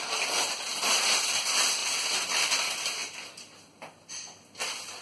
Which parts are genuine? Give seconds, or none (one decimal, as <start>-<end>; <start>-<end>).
1.8-2.4; 3.0-4.0